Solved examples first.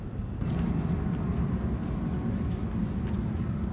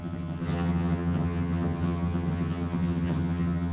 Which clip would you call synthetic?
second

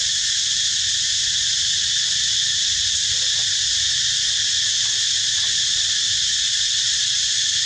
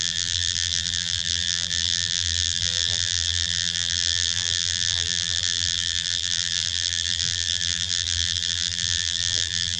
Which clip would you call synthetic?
second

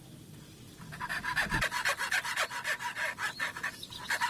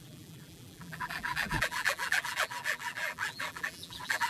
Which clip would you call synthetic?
second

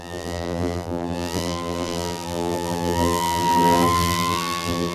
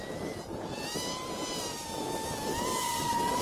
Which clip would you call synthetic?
first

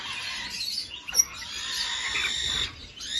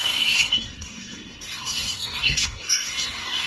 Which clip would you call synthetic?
second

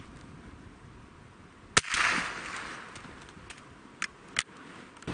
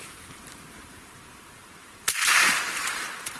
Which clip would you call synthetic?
second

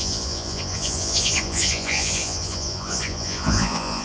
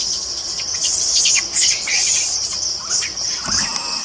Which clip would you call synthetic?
first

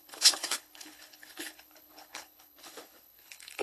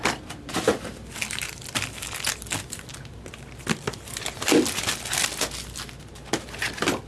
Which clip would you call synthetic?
first